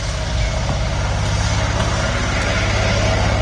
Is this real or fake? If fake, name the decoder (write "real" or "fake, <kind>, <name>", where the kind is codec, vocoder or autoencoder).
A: real